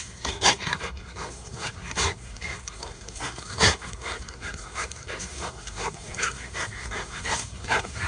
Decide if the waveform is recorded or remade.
remade